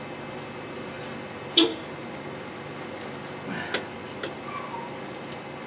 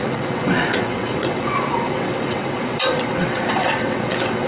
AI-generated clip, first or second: second